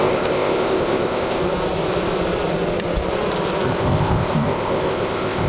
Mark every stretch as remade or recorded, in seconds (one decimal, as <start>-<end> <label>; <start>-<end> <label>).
0.0-1.4 remade; 1.4-3.8 recorded; 3.8-5.5 remade